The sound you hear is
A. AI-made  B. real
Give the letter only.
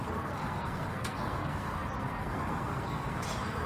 A